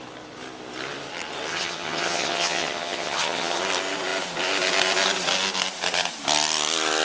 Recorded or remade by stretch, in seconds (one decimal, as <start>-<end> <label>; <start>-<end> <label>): 0.0-1.5 recorded; 1.5-3.6 remade; 3.6-7.0 recorded